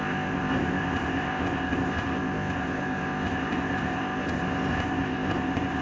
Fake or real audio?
fake